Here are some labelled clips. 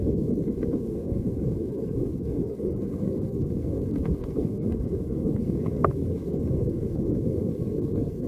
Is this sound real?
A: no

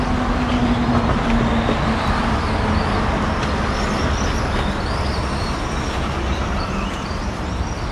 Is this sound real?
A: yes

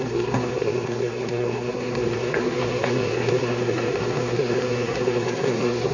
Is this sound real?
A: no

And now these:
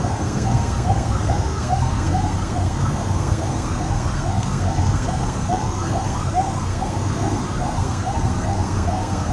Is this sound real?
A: no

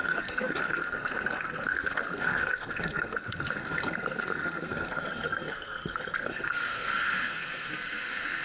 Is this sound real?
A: no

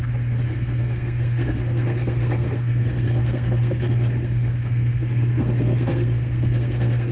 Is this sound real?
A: no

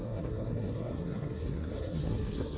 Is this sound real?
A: no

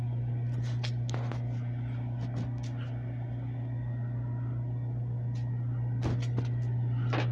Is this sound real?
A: yes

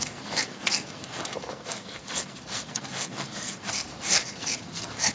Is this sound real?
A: no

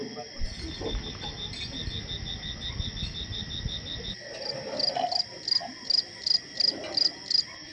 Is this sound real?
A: yes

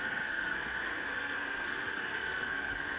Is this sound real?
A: no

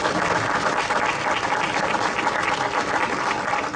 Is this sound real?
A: yes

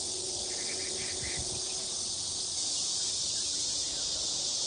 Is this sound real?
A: yes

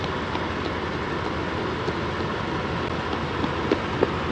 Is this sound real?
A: yes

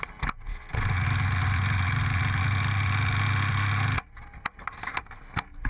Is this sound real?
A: yes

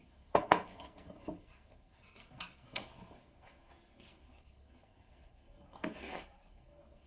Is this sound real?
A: no